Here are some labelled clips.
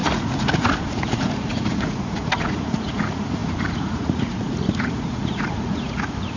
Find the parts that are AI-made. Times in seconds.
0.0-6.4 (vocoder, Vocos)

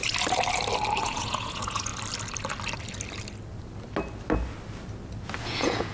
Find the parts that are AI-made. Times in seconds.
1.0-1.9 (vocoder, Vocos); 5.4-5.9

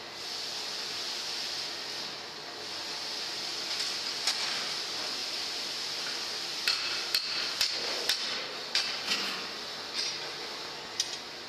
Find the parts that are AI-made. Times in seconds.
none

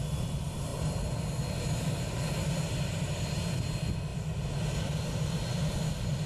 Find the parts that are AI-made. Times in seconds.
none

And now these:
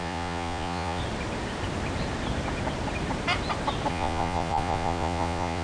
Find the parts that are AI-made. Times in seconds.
0.0-1.0 (vocoder, Vocos); 3.9-5.6

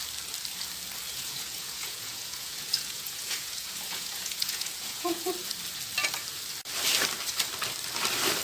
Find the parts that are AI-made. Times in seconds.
1.1-5.3 (vocoder, Vocos)

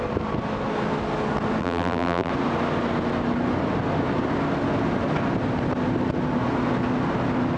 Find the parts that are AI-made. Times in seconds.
1.6-2.3 (vocoder, BigVGAN v2)

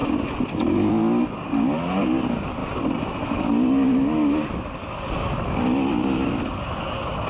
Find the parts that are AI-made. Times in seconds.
none